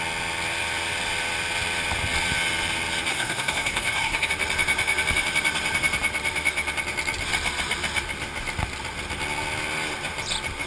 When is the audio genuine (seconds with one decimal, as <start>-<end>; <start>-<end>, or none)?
0.0-3.1; 4.3-10.7